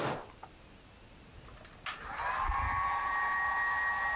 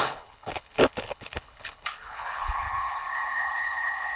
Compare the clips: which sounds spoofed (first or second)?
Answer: second